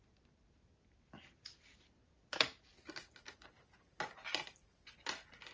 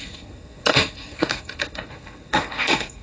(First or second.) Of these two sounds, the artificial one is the second